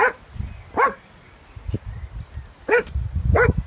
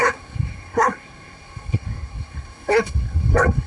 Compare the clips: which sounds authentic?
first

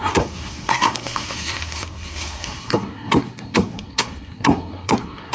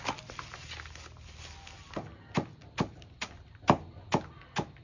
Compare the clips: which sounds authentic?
second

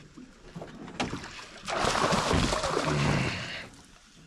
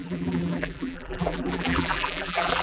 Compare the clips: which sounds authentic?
first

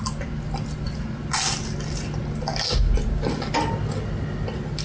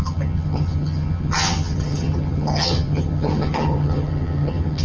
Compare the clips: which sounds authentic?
first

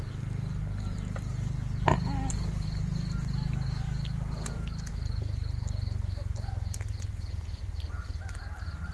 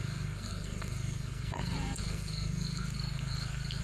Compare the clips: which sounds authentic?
first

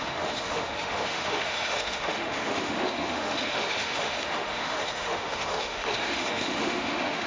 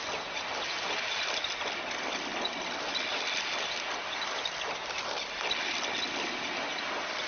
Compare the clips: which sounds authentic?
second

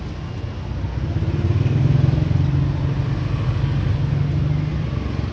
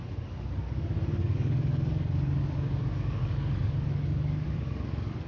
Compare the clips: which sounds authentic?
first